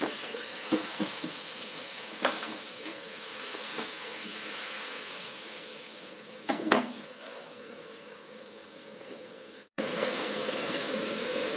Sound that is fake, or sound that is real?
fake